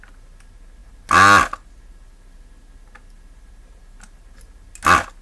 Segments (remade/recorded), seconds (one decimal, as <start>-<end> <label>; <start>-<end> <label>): 0.0-5.2 recorded